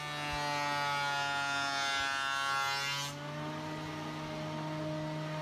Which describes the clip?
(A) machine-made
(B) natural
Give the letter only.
B